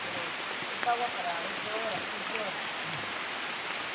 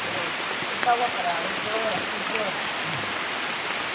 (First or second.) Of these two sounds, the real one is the first